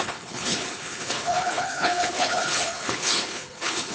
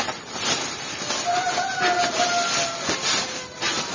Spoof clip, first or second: first